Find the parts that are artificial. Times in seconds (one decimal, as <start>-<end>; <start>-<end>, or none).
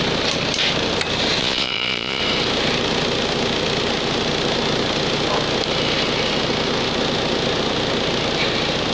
1.4-2.2